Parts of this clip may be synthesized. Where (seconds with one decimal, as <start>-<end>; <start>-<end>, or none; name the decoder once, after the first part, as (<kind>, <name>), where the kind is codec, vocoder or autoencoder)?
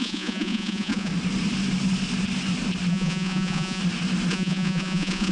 0.0-1.1 (vocoder, Vocos); 2.9-3.8; 4.3-5.3